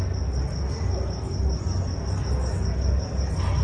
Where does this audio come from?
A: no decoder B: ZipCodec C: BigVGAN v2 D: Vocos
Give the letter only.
A